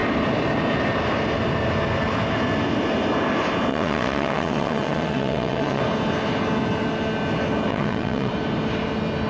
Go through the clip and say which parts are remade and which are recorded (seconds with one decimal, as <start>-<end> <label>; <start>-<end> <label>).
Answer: 0.0-3.7 recorded; 3.7-5.8 remade; 5.8-7.7 recorded; 7.7-8.3 remade; 8.3-9.3 recorded